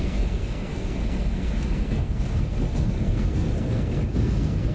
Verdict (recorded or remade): remade